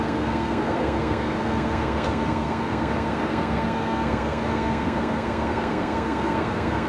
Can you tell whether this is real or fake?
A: fake